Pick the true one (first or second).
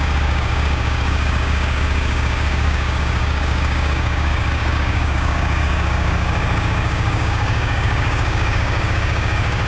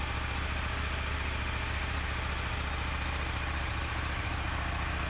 second